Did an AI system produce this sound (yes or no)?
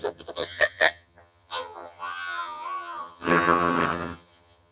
yes